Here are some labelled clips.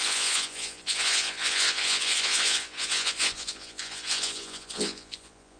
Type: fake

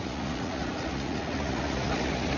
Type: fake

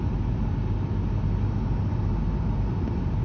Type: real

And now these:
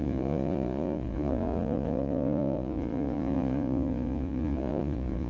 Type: fake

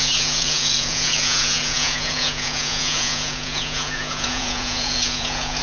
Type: fake